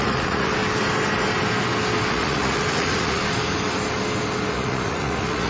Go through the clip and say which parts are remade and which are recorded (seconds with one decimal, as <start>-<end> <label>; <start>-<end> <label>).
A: 0.0-0.5 remade; 0.5-2.1 recorded; 2.1-3.2 remade; 3.2-4.5 recorded; 4.5-5.5 remade